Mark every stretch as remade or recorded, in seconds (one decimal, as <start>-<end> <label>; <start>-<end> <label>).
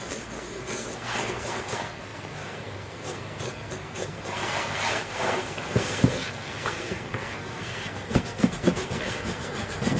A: 0.0-10.0 remade